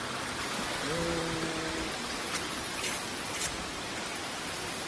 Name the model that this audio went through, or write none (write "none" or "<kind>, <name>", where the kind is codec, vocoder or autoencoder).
none